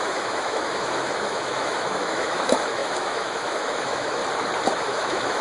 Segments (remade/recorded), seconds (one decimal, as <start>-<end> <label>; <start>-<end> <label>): 0.0-4.2 remade; 4.2-4.7 recorded; 4.7-5.4 remade